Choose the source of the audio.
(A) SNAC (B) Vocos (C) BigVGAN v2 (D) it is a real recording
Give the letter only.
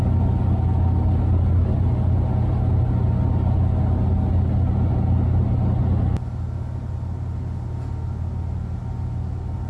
D